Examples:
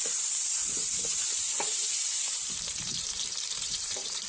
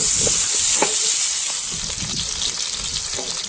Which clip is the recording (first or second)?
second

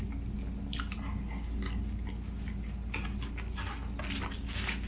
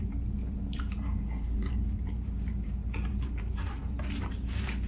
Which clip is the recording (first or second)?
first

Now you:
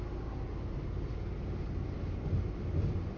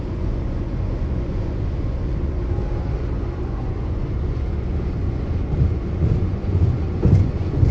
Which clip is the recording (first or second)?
first